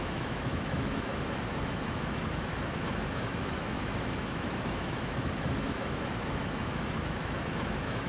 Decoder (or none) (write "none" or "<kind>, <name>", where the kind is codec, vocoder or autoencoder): autoencoder, DAC-VAE